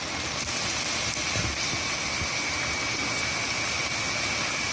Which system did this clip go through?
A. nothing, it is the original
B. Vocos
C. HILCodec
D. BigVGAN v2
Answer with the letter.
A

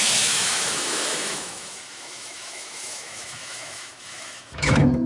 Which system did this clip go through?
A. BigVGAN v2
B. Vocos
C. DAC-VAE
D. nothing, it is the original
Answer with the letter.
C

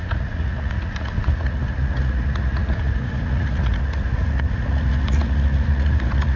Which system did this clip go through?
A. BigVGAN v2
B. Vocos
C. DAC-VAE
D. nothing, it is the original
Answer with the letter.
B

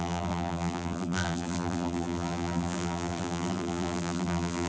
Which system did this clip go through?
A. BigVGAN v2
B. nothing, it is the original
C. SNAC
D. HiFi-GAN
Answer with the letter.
A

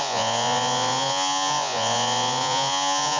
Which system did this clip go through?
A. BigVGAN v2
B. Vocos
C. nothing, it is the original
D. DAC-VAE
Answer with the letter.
B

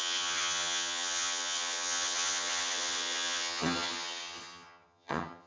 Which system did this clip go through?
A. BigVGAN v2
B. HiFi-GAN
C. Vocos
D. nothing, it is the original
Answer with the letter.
B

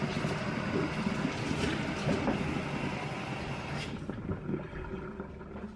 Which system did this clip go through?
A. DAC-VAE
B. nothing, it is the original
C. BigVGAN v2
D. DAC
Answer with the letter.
B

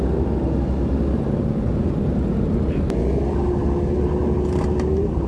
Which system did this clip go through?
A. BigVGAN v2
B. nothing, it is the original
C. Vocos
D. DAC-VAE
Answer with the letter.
B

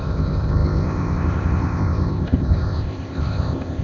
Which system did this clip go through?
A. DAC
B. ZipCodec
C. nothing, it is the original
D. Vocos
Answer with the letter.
B